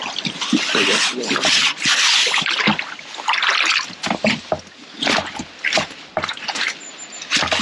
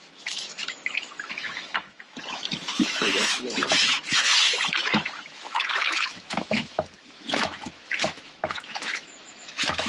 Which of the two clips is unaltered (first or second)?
first